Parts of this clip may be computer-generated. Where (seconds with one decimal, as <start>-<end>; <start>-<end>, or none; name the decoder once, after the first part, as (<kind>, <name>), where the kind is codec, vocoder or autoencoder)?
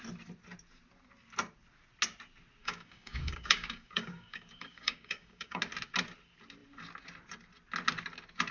2.6-5.6 (codec, DAC)